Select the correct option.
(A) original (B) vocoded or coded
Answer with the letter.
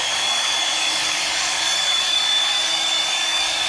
B